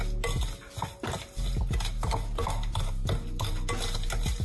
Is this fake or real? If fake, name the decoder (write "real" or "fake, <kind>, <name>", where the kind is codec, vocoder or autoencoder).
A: real